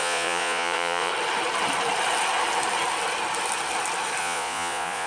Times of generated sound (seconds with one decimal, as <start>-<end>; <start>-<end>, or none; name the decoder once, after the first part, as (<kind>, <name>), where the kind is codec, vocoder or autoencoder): 0.0-1.1 (vocoder, Vocos); 4.2-5.1